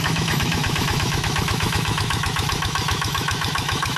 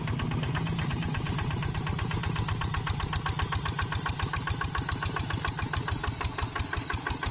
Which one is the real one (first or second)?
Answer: second